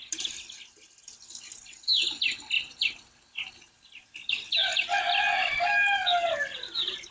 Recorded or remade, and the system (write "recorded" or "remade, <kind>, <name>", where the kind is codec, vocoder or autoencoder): recorded